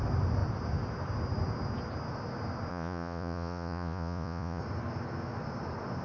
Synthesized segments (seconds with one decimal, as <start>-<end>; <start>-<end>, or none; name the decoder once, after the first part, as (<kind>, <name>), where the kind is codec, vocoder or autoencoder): 2.7-4.6 (vocoder, Vocos)